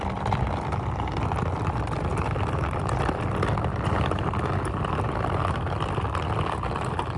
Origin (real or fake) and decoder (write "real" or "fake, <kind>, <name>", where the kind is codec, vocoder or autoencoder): real